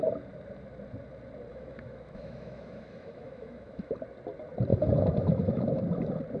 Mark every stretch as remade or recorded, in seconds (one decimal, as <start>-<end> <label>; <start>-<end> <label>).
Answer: 0.0-1.5 recorded; 1.5-3.9 remade; 3.9-4.7 recorded; 4.7-5.8 remade; 5.8-6.4 recorded